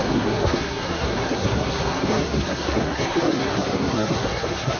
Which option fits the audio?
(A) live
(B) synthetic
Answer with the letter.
B